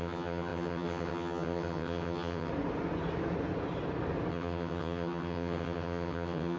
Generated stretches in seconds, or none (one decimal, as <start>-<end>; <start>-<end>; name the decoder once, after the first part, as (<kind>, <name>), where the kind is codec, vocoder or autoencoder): 0.0-2.5 (vocoder, HiFi-GAN); 4.3-6.6